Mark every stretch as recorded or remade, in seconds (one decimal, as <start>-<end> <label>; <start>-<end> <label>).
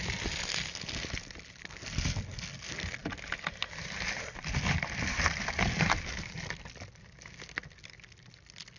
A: 0.0-8.8 recorded